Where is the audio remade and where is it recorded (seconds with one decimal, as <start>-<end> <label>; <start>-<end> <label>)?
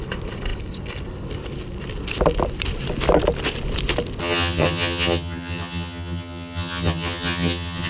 0.0-4.2 recorded; 4.2-7.9 remade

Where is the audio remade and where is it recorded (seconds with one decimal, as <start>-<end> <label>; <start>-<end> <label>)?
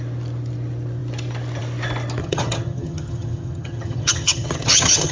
0.0-2.2 recorded; 2.2-5.1 remade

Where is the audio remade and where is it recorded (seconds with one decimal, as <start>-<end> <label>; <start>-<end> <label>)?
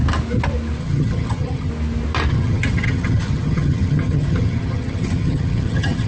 0.0-0.8 recorded; 0.8-1.7 remade; 1.7-2.3 recorded; 2.3-6.1 remade